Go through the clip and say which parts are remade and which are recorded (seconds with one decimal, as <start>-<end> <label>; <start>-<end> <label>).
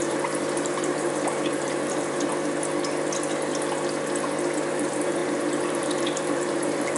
0.0-2.3 remade; 2.3-4.7 recorded; 4.7-7.0 remade